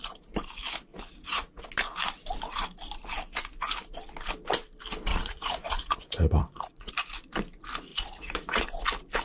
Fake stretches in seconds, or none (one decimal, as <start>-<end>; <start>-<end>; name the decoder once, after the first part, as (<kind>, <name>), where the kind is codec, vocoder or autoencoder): 0.9-1.6 (vocoder, Vocos); 5.1-6.9; 7.9-8.6